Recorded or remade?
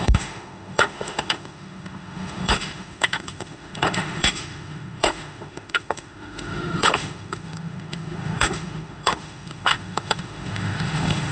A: remade